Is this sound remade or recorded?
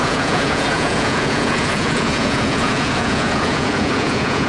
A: remade